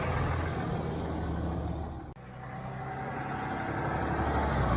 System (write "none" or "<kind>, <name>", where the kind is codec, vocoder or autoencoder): none